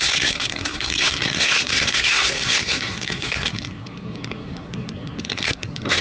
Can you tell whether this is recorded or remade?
remade